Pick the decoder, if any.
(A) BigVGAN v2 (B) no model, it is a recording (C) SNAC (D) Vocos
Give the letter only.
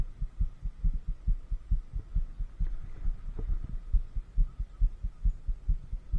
B